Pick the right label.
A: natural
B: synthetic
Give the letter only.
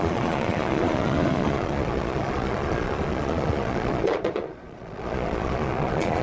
B